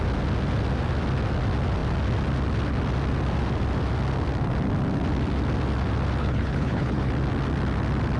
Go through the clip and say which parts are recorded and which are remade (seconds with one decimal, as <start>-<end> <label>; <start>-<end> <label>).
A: 0.0-6.2 recorded; 6.2-7.1 remade; 7.1-8.2 recorded